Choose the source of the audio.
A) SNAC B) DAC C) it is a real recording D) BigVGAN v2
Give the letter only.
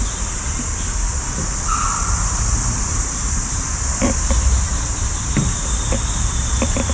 D